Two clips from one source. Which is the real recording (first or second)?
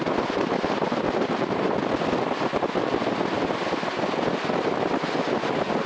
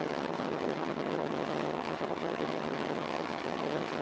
first